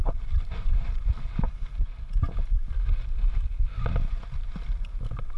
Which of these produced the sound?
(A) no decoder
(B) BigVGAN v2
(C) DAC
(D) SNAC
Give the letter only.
A